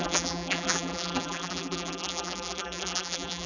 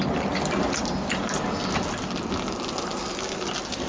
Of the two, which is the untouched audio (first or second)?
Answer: second